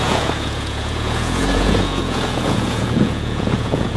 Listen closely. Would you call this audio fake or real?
fake